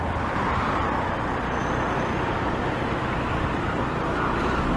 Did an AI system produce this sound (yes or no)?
no